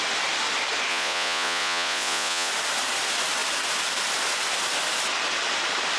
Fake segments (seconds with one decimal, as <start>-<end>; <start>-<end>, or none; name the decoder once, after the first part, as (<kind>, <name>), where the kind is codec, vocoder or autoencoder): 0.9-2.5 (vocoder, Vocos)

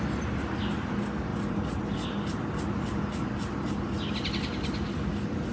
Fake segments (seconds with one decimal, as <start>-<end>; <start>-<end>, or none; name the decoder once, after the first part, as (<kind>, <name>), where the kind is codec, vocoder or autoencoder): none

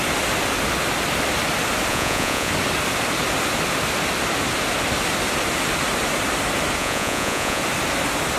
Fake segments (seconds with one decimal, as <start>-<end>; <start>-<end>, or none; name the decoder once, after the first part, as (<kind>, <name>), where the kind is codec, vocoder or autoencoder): 1.9-2.5 (vocoder, Vocos); 6.8-7.6

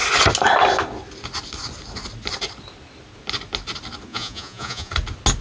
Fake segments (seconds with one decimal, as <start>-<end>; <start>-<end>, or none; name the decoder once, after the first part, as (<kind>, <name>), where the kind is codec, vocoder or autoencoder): 4.1-4.9 (vocoder, Vocos)

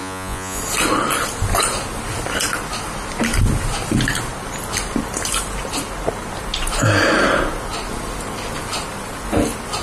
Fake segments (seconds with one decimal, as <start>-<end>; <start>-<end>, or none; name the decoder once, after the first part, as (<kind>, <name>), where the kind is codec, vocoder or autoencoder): 0.0-0.6 (vocoder, Vocos)